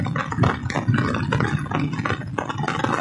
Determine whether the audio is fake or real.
real